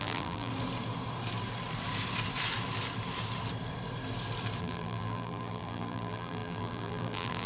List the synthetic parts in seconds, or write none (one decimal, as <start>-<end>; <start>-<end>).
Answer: 0.0-0.5; 4.6-7.5

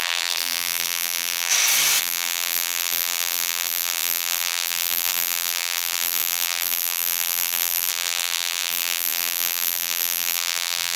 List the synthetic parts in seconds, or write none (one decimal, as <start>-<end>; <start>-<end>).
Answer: 0.0-1.5; 2.0-11.0